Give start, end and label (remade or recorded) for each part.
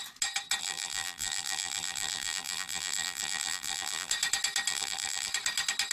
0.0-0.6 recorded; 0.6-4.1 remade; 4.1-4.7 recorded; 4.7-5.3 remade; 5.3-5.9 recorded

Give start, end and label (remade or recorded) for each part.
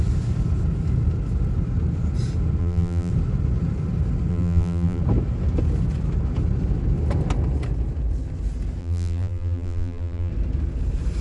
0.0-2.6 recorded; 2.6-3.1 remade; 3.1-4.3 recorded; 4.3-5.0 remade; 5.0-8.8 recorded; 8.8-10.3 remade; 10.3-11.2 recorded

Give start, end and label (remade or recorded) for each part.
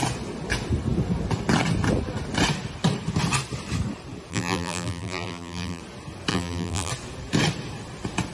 0.0-4.3 recorded; 4.3-5.8 remade; 5.8-6.3 recorded; 6.3-6.9 remade; 6.9-8.3 recorded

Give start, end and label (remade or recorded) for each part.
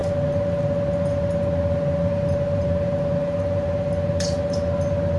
0.0-5.2 recorded